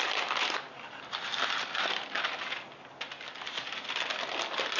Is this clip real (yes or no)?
yes